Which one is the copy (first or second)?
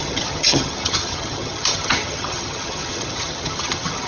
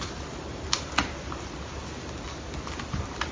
first